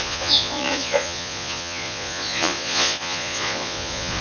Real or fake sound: fake